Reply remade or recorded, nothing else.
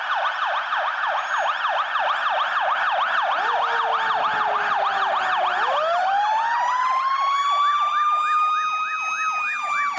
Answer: recorded